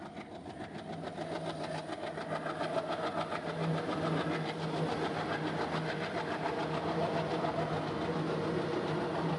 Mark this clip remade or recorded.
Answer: recorded